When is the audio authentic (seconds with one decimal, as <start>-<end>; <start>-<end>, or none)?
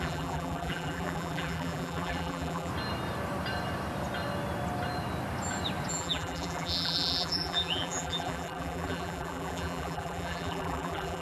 2.7-5.9